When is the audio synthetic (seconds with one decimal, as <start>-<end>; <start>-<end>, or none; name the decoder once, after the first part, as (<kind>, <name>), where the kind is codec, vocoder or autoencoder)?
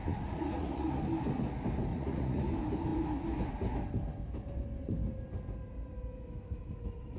0.0-1.0 (vocoder, Vocos); 1.9-2.5